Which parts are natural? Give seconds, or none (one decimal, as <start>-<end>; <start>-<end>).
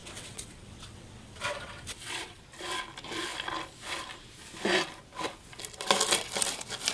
2.4-6.9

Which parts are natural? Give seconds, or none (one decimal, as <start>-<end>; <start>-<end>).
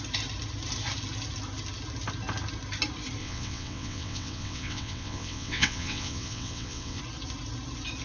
0.0-3.2; 7.0-8.0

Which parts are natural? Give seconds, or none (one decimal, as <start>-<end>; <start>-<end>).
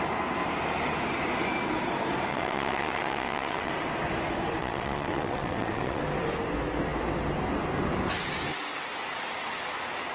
0.0-2.3; 3.7-4.6; 6.0-10.1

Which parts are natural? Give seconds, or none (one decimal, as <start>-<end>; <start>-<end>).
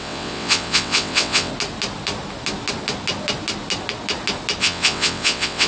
1.5-4.6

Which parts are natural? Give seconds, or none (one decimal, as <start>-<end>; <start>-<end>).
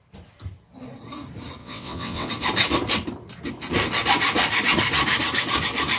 0.0-1.6; 2.3-6.0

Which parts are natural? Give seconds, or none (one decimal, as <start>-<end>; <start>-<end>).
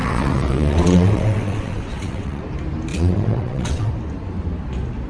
2.4-2.9; 3.9-5.1